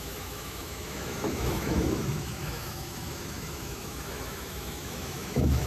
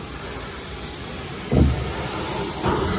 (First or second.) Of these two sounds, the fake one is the first